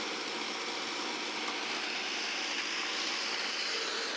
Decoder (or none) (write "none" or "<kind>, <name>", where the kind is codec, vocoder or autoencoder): none